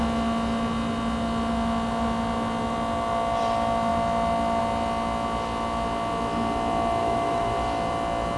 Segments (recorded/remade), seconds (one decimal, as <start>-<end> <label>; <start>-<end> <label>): 0.0-7.0 recorded; 7.0-7.5 remade; 7.5-8.4 recorded